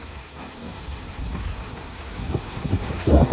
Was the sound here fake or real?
fake